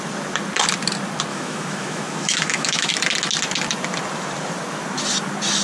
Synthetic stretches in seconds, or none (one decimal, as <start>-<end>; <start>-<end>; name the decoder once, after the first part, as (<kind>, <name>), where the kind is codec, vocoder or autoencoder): 1.3-2.9 (autoencoder, DAC-VAE)